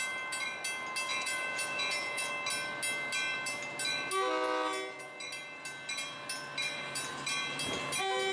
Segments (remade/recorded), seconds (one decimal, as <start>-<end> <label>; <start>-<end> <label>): 0.0-1.1 recorded; 1.1-2.3 remade; 2.3-8.3 recorded